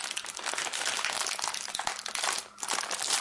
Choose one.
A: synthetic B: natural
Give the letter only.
B